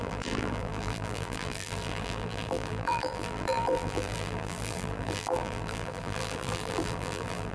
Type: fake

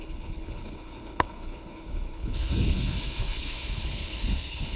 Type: fake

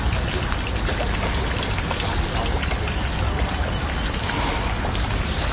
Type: real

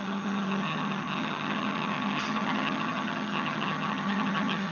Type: fake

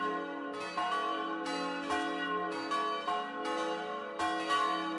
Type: real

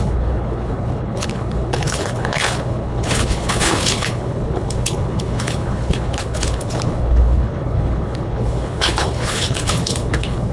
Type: fake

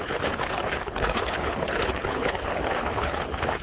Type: fake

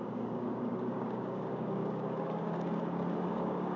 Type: fake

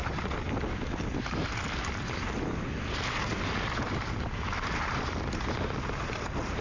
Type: real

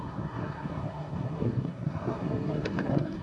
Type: fake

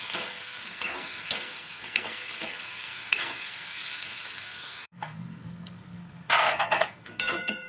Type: fake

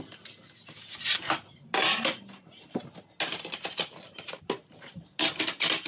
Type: real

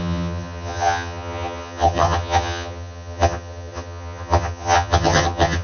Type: fake